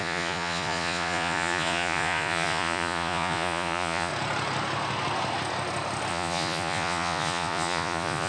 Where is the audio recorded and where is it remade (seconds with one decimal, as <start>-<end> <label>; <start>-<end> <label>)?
0.0-4.1 remade; 4.1-6.1 recorded; 6.1-8.3 remade